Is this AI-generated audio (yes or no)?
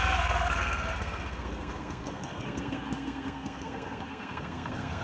yes